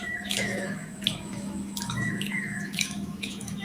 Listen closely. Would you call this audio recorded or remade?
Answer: remade